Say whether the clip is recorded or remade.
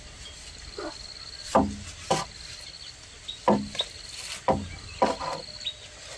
recorded